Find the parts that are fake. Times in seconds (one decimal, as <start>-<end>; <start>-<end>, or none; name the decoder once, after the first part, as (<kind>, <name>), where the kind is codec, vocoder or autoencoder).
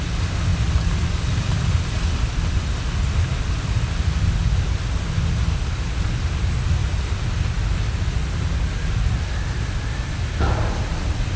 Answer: none